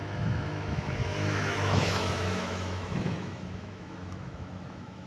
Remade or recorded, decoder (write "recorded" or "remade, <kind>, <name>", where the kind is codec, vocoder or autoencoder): remade, autoencoder, DAC-VAE